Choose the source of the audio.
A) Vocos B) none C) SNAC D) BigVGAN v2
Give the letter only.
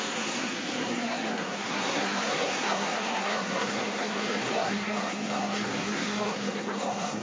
C